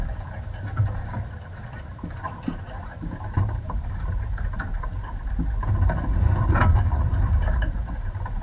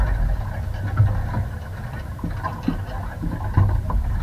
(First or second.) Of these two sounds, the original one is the second